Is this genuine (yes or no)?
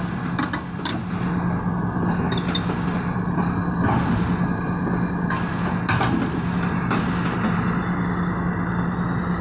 yes